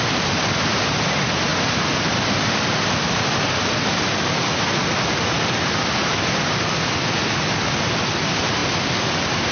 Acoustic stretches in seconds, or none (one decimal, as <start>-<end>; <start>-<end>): none